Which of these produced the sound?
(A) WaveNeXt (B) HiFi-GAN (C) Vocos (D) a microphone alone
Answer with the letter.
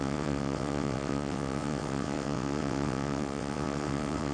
A